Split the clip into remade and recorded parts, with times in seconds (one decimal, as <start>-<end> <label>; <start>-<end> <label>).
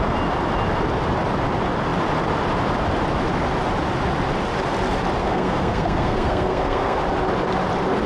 0.0-5.2 recorded; 5.2-7.0 remade; 7.0-8.1 recorded